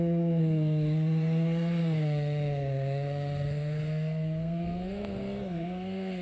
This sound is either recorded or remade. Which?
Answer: remade